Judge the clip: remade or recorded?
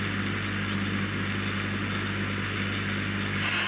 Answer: recorded